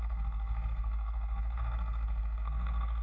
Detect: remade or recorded remade